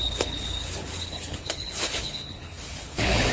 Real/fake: fake